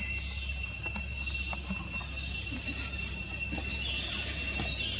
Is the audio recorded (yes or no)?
yes